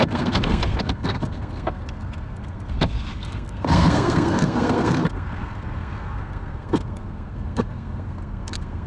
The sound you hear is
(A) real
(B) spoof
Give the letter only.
B